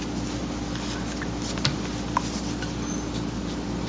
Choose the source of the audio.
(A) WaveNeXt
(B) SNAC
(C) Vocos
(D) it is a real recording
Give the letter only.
D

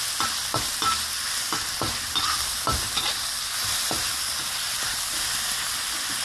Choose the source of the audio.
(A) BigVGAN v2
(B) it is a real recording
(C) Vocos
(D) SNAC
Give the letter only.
B